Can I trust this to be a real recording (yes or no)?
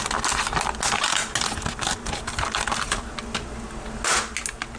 yes